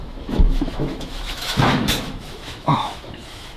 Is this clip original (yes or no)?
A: no